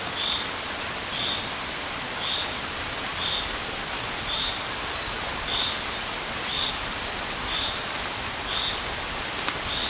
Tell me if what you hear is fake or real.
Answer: real